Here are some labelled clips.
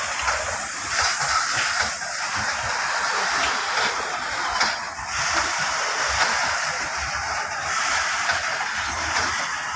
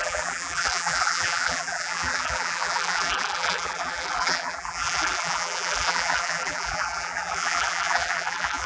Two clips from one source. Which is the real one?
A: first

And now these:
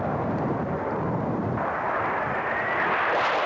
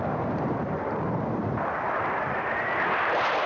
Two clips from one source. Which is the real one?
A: first